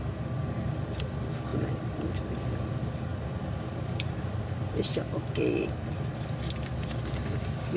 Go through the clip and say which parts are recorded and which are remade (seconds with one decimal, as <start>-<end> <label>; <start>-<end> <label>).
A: 0.0-1.5 recorded; 1.5-2.2 remade; 2.2-3.1 recorded; 3.1-6.9 remade; 6.9-7.8 recorded